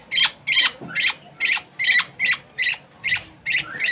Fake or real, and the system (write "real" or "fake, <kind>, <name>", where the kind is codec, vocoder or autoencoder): real